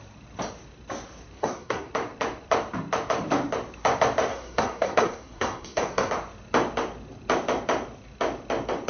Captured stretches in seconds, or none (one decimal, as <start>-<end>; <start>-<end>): 0.0-1.4; 1.9-4.3; 6.1-8.9